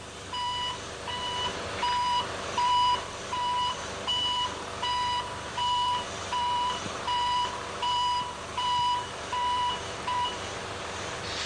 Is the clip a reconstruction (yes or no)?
yes